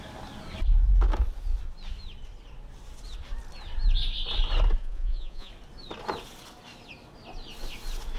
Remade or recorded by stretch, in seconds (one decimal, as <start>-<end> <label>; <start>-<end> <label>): 0.0-4.8 recorded; 4.8-5.5 remade; 5.5-8.2 recorded